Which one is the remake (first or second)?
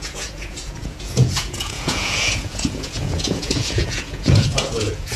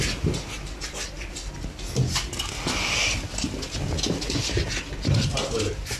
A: first